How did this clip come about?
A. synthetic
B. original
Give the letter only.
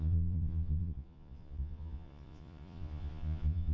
A